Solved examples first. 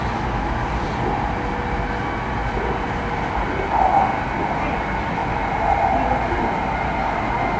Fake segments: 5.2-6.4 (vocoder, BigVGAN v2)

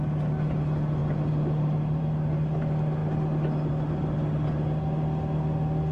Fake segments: none

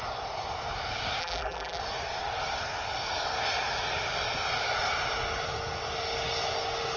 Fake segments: 1.2-1.8 (vocoder, BigVGAN v2)

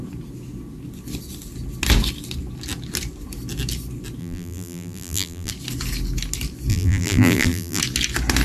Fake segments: 4.2-5.5 (vocoder, BigVGAN v2); 6.7-7.8